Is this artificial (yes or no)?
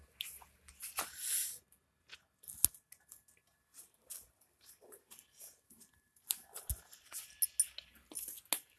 no